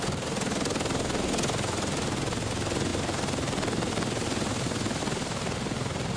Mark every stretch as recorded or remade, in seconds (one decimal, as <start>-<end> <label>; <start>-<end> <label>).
0.0-6.2 recorded